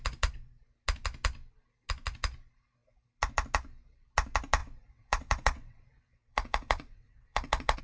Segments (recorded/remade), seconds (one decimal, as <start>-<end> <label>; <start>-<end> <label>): 0.0-4.6 recorded; 4.6-7.8 remade